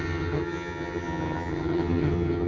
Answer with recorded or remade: remade